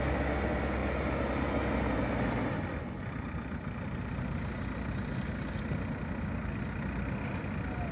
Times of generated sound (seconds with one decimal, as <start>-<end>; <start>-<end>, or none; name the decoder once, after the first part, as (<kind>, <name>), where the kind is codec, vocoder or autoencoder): none